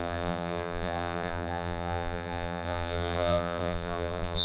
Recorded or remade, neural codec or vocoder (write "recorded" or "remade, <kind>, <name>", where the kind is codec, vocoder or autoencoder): remade, vocoder, BigVGAN v2